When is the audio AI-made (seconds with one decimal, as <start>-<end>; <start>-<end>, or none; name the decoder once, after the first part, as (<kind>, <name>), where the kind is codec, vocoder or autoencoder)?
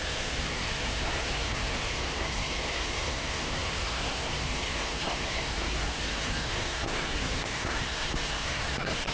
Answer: 0.0-9.1 (codec, SNAC)